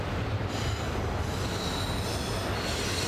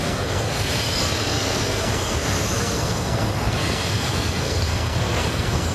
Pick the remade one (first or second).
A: second